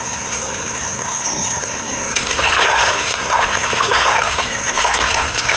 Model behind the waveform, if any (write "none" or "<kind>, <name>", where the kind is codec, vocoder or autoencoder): codec, SNAC